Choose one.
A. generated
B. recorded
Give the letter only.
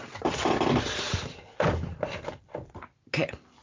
B